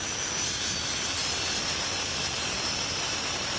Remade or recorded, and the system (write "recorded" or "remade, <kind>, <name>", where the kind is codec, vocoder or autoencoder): recorded